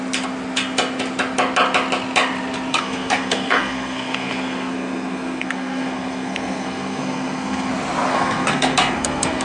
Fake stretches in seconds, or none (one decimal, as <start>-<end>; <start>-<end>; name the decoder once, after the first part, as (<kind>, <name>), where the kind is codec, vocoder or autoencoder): 2.7-7.7 (codec, SNAC); 8.1-9.4